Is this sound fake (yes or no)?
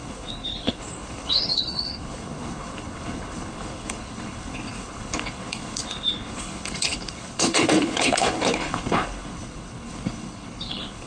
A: yes